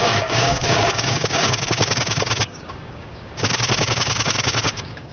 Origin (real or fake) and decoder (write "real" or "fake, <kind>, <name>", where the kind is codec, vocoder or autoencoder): fake, codec, DAC